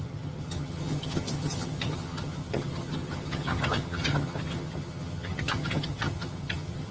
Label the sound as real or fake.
fake